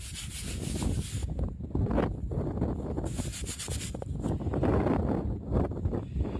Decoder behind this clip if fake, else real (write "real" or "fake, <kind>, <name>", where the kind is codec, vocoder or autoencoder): real